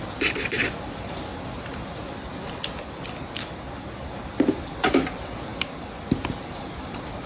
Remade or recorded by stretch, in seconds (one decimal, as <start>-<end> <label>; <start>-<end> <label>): 0.0-7.3 recorded